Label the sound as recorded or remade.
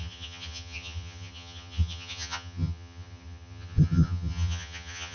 remade